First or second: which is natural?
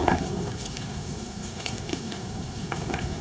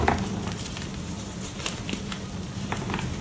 second